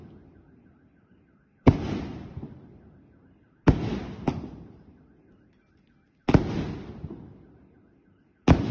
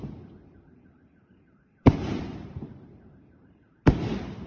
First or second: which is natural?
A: first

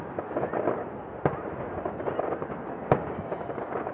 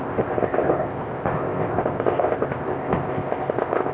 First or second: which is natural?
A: first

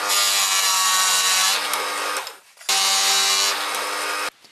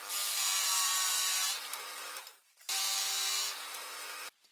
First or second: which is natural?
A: first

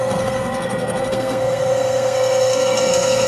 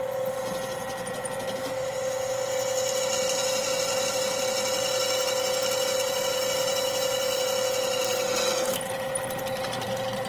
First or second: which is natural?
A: second